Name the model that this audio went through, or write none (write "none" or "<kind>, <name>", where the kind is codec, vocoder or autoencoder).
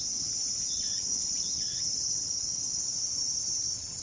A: vocoder, HiFi-GAN